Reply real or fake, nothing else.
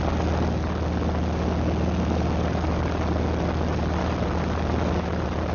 real